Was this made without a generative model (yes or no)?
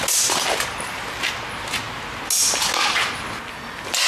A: yes